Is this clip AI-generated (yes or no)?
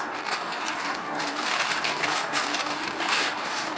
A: yes